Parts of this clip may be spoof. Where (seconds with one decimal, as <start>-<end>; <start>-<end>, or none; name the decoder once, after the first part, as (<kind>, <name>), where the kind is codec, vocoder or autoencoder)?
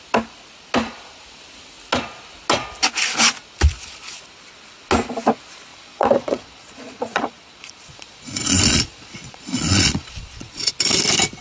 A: 5.7-10.7 (vocoder, Vocos)